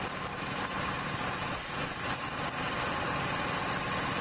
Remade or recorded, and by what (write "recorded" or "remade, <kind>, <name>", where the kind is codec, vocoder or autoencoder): recorded